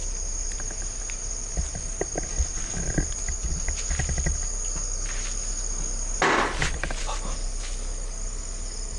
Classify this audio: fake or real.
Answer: real